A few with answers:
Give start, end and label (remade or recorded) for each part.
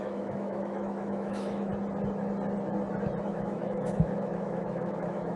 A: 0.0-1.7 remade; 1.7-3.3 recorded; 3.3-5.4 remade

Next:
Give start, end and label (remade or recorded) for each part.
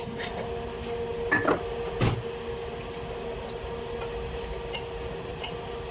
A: 0.0-5.9 recorded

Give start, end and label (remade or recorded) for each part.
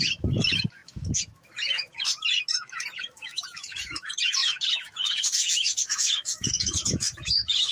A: 0.0-7.7 remade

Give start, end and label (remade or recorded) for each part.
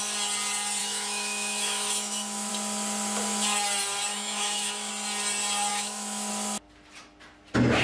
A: 0.0-0.8 recorded; 0.8-2.5 remade; 2.5-4.1 recorded; 4.1-4.9 remade; 4.9-5.7 recorded; 5.7-6.3 remade; 6.3-7.8 recorded